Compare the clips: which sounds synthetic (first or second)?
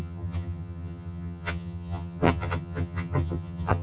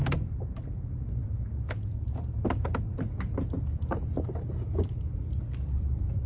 first